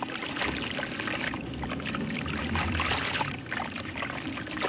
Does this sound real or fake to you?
fake